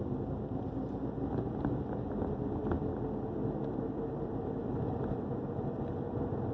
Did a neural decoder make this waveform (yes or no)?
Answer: no